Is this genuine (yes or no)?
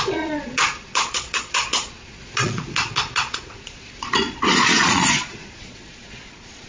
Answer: no